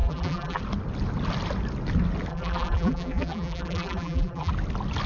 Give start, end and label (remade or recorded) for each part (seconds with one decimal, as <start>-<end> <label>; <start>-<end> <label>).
0.0-0.6 remade; 0.6-2.3 recorded; 2.3-4.5 remade; 4.5-5.1 recorded